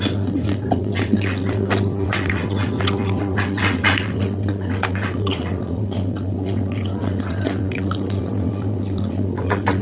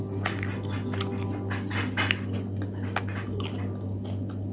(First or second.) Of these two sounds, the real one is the second